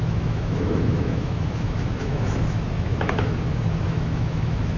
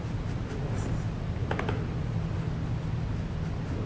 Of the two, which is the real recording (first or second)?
second